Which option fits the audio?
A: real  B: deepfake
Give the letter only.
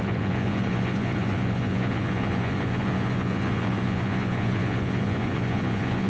B